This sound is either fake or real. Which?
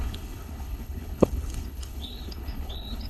fake